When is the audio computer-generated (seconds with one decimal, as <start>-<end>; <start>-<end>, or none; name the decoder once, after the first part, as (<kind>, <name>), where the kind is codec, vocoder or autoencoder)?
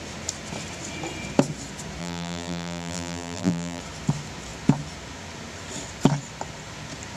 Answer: 2.0-3.8 (vocoder, BigVGAN v2)